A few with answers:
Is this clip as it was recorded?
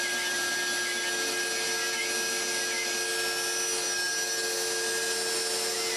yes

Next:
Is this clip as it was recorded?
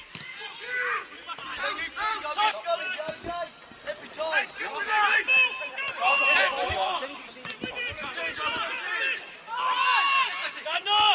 yes